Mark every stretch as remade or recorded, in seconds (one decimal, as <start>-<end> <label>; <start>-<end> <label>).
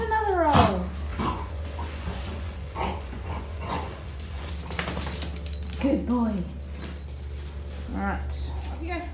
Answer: 0.0-1.1 recorded; 1.1-4.5 remade; 4.5-9.1 recorded